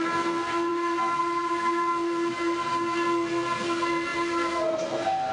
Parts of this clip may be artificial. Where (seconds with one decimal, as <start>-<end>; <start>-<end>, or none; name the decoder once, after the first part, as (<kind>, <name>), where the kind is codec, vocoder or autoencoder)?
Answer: 0.0-5.3 (codec, SNAC)